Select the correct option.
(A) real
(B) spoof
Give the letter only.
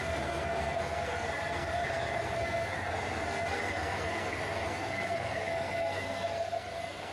B